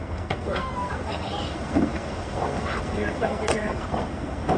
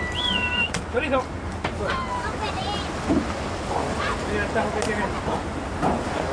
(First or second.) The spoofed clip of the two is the first